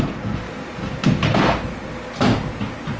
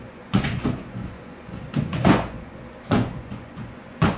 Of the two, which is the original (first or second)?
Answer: first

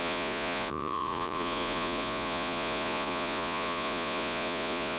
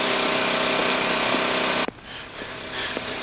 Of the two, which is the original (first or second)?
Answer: second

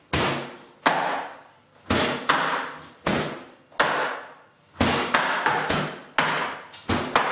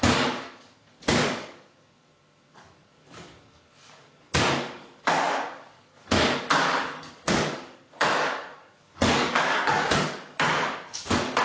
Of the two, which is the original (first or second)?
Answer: first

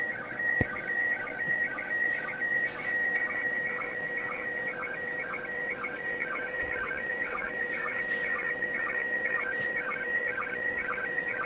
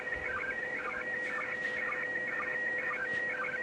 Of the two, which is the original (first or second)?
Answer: second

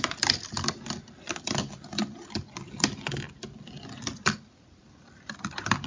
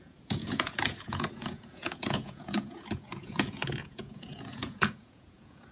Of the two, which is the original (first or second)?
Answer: first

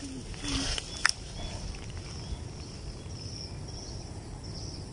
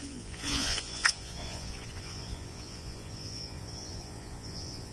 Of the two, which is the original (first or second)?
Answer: first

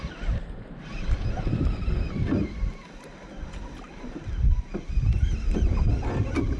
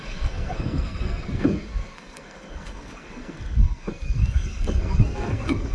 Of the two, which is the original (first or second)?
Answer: first